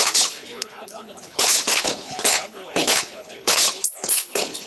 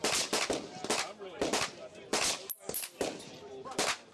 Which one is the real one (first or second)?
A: second